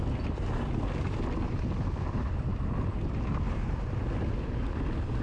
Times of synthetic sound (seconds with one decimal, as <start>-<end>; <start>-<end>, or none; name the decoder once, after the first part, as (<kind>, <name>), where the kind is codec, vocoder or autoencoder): none